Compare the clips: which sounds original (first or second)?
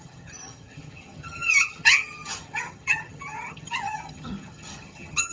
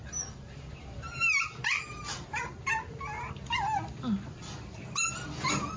second